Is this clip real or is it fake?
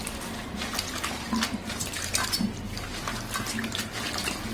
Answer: real